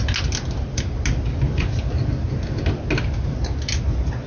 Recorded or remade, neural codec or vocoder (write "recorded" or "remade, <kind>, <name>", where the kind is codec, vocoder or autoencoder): recorded